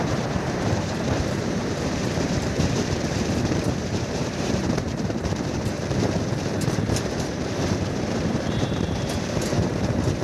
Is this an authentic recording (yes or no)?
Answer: no